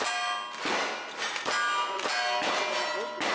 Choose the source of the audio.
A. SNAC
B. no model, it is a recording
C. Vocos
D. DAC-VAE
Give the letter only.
B